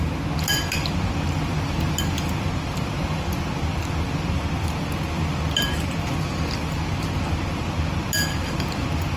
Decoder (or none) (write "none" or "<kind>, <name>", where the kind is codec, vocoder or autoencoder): none